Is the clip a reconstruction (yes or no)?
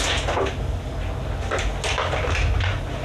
no